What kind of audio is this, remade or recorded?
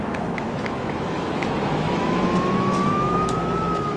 remade